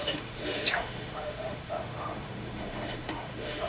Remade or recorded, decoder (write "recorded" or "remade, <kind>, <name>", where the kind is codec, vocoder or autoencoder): remade, autoencoder, DAC-VAE